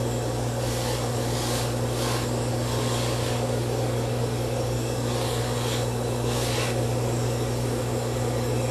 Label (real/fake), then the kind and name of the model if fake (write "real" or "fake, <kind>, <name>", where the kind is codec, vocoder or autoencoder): fake, codec, DAC